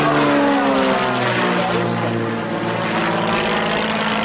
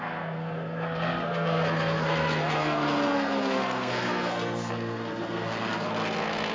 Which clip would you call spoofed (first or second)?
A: second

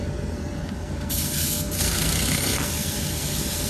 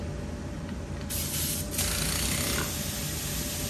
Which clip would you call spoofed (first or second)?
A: first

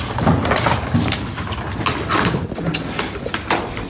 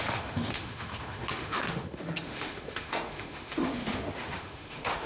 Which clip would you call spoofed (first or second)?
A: second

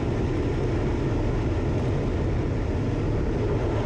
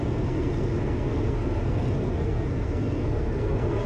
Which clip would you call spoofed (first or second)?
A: second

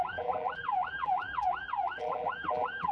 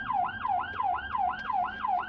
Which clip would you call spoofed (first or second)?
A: first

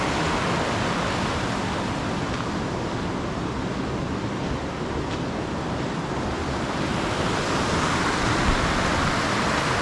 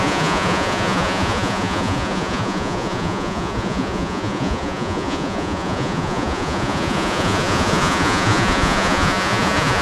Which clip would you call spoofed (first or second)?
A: second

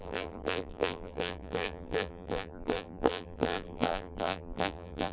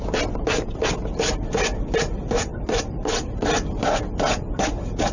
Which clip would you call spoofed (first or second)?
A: first